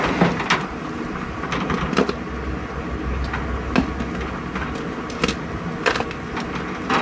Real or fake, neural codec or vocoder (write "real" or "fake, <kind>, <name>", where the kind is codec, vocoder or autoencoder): real